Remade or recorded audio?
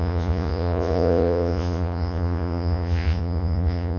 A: remade